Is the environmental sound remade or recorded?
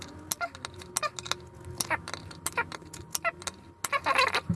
recorded